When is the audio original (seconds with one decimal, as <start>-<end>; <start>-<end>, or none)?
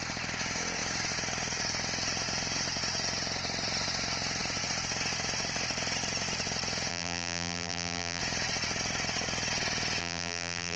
0.0-6.9; 8.2-10.0